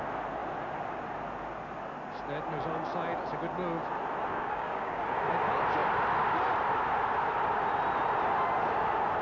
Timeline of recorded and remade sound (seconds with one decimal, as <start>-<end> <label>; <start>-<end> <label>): 0.0-4.3 recorded; 4.3-5.0 remade; 5.0-9.2 recorded